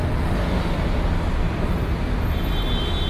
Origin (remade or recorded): recorded